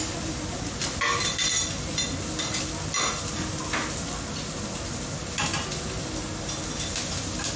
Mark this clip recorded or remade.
recorded